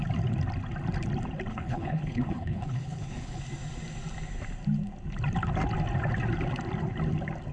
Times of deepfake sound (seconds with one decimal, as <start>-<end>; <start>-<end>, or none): 1.5-3.4